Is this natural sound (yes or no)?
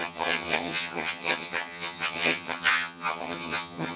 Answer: no